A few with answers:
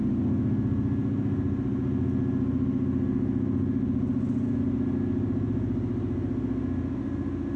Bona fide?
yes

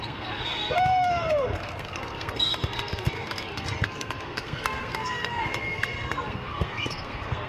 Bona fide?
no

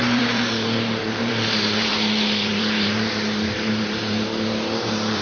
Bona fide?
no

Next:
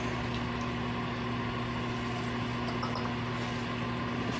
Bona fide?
yes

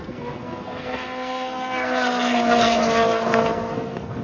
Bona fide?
no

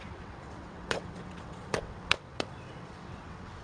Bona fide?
no